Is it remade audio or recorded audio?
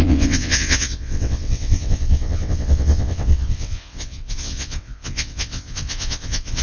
remade